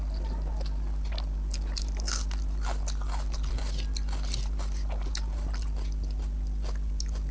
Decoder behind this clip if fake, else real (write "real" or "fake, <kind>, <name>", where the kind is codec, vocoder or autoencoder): real